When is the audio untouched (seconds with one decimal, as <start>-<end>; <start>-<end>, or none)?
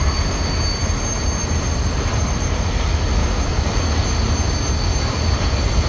0.0-3.2; 3.8-5.9